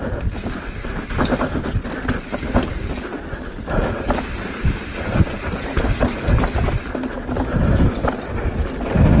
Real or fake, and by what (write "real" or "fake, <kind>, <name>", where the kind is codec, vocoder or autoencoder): real